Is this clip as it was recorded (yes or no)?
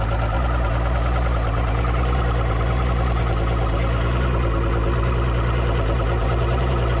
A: yes